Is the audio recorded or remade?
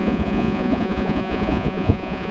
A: remade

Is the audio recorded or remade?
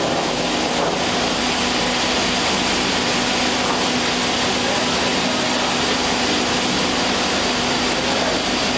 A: recorded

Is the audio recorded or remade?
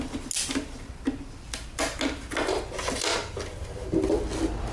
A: recorded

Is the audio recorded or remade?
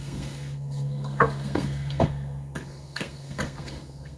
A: remade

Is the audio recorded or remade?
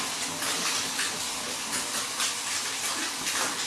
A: recorded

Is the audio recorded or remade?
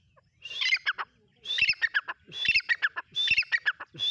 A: recorded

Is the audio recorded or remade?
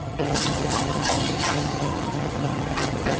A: remade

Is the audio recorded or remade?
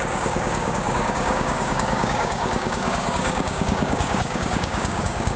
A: remade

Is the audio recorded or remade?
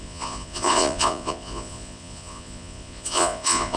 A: remade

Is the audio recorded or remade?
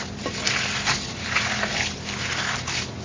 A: recorded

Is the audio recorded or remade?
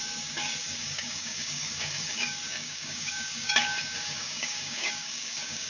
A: remade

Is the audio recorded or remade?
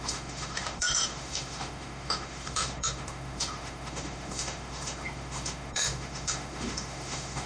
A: remade